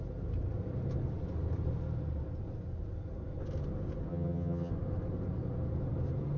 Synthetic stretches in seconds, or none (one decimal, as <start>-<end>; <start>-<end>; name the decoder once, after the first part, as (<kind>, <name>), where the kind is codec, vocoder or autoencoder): 4.1-4.7 (vocoder, HiFi-GAN)